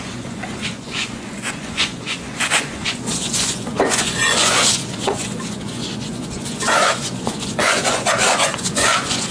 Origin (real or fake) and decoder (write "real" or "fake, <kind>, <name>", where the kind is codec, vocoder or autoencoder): fake, vocoder, Vocos